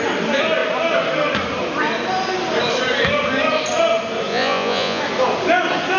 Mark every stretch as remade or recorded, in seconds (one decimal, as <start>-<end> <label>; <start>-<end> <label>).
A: 0.0-4.3 recorded; 4.3-5.0 remade; 5.0-6.0 recorded